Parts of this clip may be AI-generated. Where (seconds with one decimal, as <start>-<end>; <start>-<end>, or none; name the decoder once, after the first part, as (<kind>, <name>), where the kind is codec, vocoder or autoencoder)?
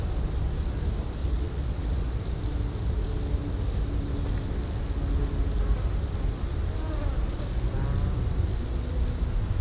1.2-2.2 (vocoder, Vocos); 8.5-9.0